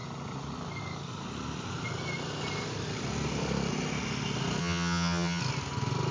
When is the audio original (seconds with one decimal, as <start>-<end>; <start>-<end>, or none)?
0.0-4.6; 5.4-6.1